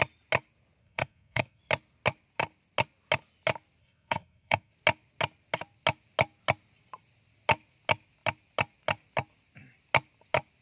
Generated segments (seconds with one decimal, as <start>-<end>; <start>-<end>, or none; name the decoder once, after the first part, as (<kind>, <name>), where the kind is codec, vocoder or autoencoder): 0.8-1.6 (codec, SNAC); 3.8-4.7